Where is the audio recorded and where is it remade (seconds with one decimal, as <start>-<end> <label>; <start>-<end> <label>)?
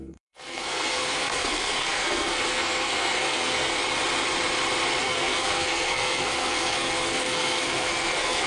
0.0-3.8 remade; 3.8-5.0 recorded; 5.0-8.5 remade